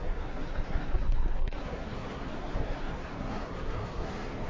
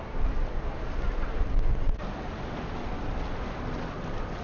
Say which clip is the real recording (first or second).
second